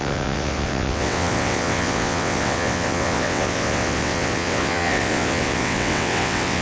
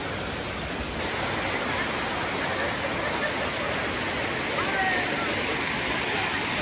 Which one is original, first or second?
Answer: second